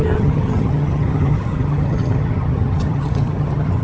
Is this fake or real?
fake